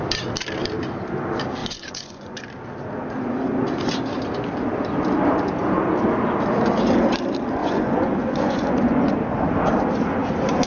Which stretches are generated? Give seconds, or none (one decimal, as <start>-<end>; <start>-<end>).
1.6-2.4; 7.6-9.1